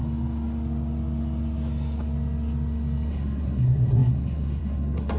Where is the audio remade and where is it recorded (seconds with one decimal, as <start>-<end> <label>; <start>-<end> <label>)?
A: 0.0-3.1 recorded; 3.1-5.2 remade